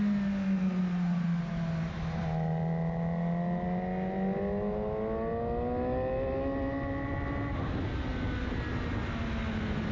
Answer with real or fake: real